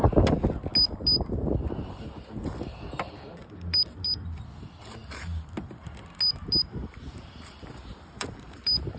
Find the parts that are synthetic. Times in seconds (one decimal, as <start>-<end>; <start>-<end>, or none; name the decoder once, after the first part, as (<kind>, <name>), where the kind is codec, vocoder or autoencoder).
none